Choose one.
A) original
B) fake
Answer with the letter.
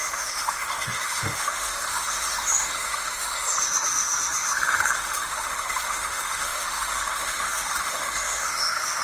B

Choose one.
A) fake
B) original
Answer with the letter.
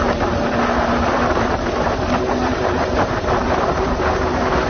A